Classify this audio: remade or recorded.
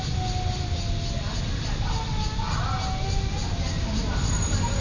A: recorded